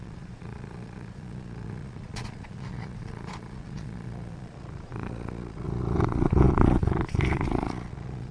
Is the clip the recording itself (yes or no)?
no